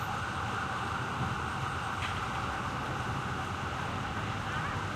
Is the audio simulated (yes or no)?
no